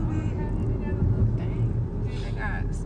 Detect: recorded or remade recorded